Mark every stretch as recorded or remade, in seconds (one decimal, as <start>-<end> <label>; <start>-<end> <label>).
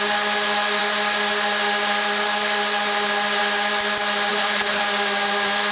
0.0-4.3 recorded; 4.3-4.8 remade; 4.8-5.7 recorded